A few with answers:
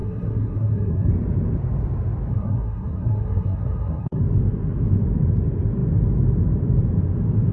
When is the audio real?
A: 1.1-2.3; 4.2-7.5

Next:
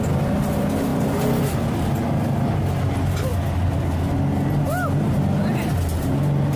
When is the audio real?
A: 0.0-6.6

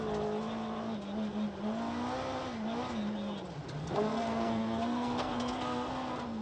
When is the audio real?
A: 0.0-3.8

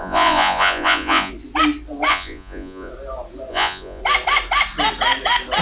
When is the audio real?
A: 1.3-2.1; 2.9-3.5; 4.0-5.6

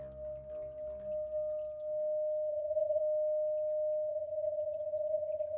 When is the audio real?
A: 0.0-2.5; 3.0-4.1